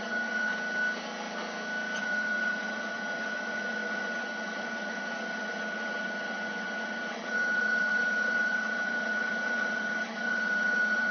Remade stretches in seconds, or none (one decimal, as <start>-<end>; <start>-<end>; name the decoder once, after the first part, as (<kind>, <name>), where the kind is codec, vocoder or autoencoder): 0.0-0.5 (vocoder, HiFi-GAN); 2.0-11.1